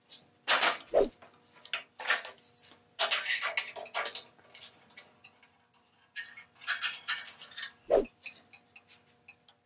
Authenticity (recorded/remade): recorded